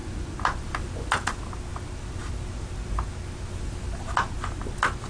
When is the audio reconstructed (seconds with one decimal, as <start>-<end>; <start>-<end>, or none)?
none